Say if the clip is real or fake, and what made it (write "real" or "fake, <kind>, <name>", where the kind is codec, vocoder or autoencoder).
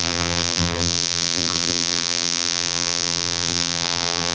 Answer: fake, vocoder, BigVGAN v2